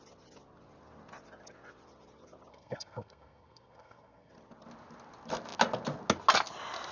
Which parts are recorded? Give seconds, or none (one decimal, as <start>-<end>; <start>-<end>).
0.0-2.5; 4.3-6.9